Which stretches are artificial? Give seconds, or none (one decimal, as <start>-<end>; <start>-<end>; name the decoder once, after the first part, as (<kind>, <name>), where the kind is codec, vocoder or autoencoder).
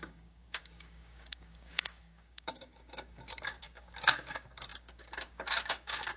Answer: 0.0-6.2 (codec, DAC)